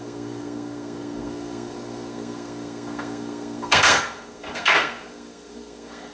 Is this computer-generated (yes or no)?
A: yes